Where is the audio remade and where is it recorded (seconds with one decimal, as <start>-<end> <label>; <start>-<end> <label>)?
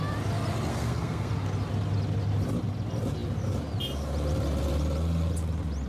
0.0-0.7 recorded; 0.7-1.3 remade; 1.3-5.9 recorded